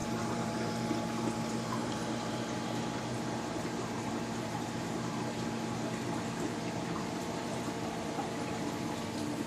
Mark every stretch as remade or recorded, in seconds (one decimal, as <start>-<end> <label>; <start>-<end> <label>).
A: 0.0-0.7 remade; 0.7-1.8 recorded; 1.8-5.2 remade; 5.2-6.5 recorded; 6.5-8.8 remade; 8.8-9.5 recorded